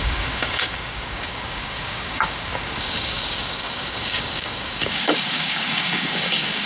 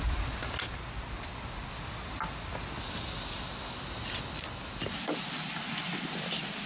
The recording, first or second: second